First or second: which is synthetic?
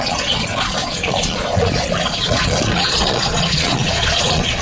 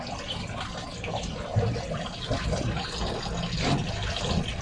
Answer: first